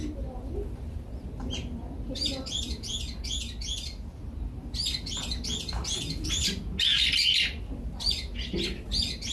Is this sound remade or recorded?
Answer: recorded